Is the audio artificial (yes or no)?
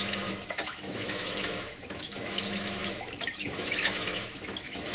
yes